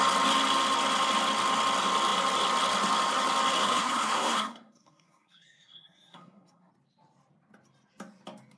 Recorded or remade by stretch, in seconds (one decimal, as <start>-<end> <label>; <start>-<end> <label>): 0.0-3.6 recorded; 3.6-6.7 remade; 6.7-8.6 recorded